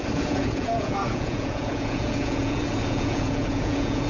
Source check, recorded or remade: remade